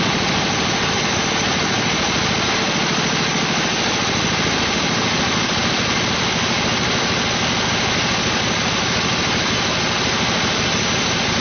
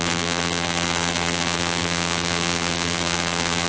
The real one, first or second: first